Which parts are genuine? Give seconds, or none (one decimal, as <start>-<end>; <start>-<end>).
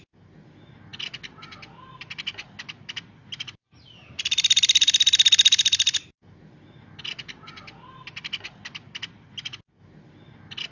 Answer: 0.0-10.7